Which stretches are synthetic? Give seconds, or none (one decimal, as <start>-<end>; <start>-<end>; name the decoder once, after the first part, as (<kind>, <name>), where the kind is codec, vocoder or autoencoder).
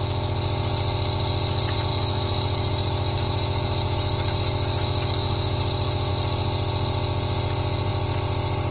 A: 1.9-6.1 (autoencoder, DAC-VAE)